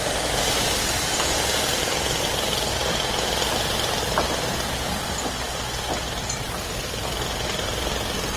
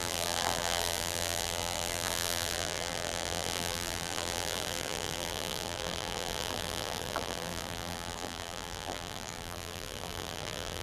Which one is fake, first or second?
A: second